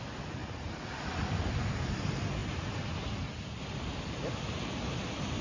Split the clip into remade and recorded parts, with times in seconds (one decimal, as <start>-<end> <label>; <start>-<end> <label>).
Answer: 0.0-5.4 recorded